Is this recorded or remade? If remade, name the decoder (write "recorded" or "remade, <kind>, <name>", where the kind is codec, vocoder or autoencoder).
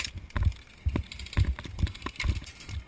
recorded